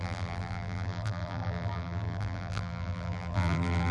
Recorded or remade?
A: remade